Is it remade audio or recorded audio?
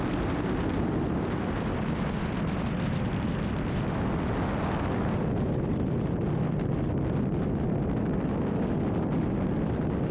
recorded